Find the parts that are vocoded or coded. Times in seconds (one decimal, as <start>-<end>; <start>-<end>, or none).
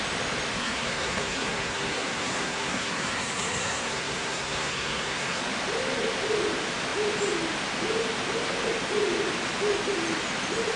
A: 0.6-5.4